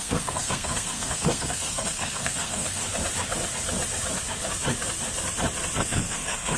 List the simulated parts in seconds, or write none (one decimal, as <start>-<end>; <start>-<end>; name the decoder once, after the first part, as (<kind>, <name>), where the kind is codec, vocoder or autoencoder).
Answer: 0.0-2.8 (codec, SNAC); 5.8-6.6